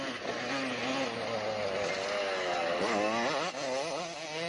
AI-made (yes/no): no